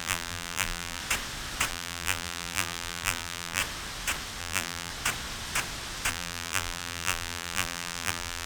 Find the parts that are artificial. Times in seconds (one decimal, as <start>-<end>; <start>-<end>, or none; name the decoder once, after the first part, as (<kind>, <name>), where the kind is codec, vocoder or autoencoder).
0.0-1.0 (vocoder, BigVGAN v2); 1.7-3.6; 4.4-4.9; 6.1-8.5